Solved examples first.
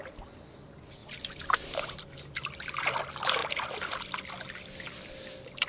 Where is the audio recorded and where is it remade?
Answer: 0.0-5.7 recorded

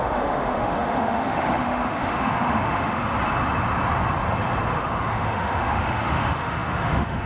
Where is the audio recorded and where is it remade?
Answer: 0.0-3.0 remade; 3.0-4.7 recorded; 4.7-7.3 remade

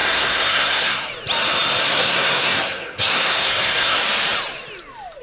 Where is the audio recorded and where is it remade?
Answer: 0.0-1.1 remade; 1.1-1.8 recorded; 1.8-4.0 remade; 4.0-5.2 recorded

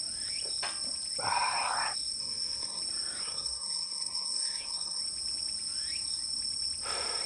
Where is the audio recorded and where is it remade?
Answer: 0.0-2.2 recorded; 2.2-2.8 remade; 2.8-3.2 recorded; 3.2-5.0 remade; 5.0-7.3 recorded